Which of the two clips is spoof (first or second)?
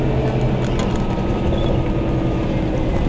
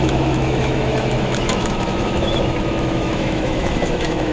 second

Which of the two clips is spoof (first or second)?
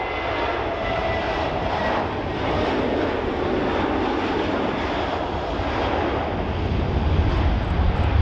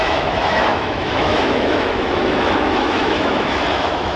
second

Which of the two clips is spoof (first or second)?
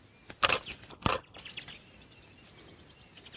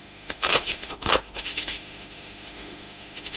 second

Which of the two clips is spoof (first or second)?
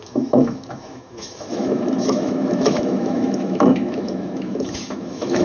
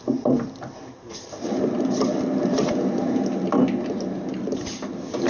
first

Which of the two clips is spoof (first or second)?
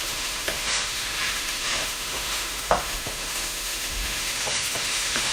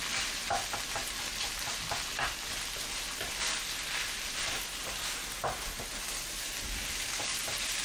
first